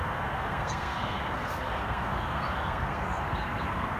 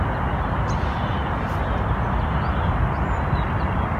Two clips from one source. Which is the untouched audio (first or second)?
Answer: second